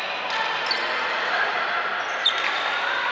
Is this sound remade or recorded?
recorded